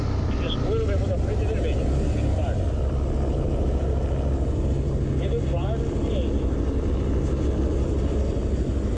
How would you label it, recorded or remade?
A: recorded